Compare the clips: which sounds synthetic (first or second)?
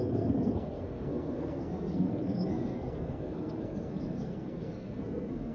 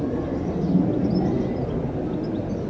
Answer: first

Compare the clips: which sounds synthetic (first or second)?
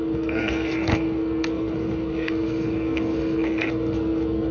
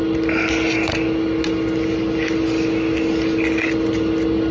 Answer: first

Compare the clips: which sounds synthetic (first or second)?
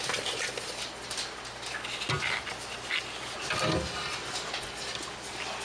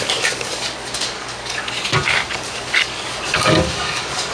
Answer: second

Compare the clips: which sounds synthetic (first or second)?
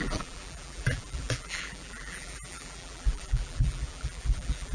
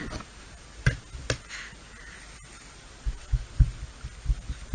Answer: first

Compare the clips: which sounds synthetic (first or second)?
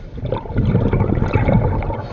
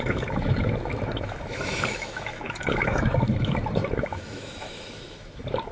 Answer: second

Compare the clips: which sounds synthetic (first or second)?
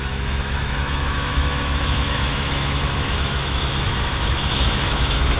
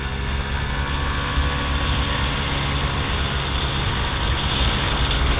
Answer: first